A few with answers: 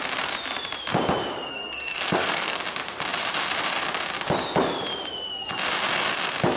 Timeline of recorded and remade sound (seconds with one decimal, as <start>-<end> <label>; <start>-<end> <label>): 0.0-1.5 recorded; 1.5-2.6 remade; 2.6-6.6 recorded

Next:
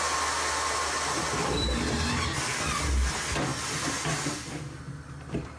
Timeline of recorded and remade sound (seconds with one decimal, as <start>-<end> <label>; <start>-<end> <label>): 0.0-5.6 recorded

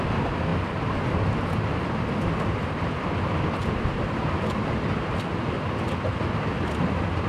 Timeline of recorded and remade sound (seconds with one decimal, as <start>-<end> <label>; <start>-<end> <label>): 0.0-7.3 recorded

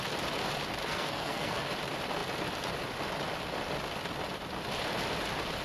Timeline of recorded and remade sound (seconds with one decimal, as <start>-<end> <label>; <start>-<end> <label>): 0.0-0.8 recorded; 0.8-1.7 remade; 1.7-5.6 recorded

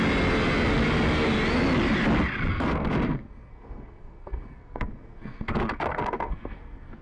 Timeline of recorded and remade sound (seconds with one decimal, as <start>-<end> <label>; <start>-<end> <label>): 0.0-2.5 recorded; 2.5-7.0 remade

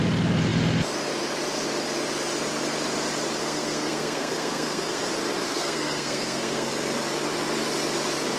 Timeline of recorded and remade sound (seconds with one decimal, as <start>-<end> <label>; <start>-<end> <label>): 0.0-3.4 recorded; 3.4-5.0 remade; 5.0-5.5 recorded; 5.5-6.7 remade; 6.7-8.4 recorded